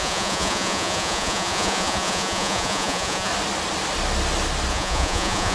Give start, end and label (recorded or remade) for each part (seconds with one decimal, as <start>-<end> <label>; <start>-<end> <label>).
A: 0.0-3.3 remade; 3.3-4.7 recorded; 4.7-5.5 remade